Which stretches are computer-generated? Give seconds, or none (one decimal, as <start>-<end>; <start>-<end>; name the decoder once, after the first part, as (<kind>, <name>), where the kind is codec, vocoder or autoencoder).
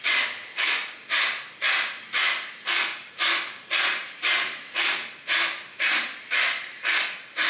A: 3.9-4.6 (vocoder, BigVGAN v2)